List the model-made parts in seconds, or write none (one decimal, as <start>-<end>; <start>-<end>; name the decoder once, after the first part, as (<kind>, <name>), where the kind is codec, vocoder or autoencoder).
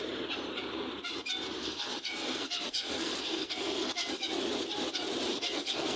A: 1.6-4.3 (codec, SNAC); 5.3-6.0